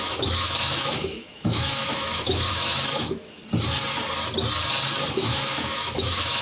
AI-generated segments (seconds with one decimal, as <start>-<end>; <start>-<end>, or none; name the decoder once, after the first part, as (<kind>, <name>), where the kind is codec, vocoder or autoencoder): 0.0-3.4 (autoencoder, DAC-VAE); 5.1-6.4